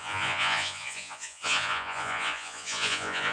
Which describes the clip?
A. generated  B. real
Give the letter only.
A